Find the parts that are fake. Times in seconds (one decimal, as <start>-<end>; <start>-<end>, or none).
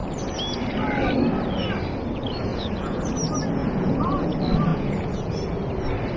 2.5-3.0; 3.6-4.3; 4.7-5.3